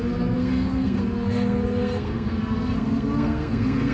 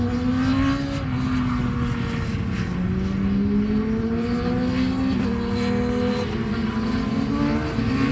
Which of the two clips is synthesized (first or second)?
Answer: first